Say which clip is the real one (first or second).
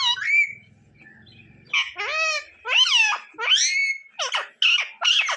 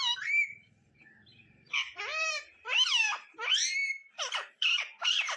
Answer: first